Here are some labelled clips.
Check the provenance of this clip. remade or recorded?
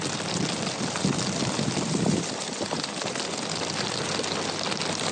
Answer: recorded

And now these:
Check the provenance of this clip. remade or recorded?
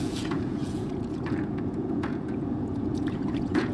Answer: remade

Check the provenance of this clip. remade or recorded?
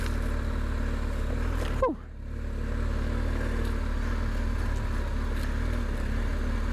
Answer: recorded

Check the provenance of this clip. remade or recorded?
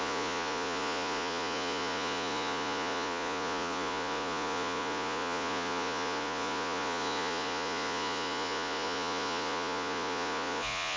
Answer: remade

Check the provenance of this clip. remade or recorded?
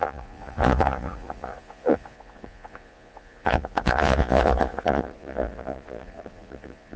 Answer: remade